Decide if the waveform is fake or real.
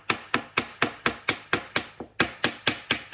real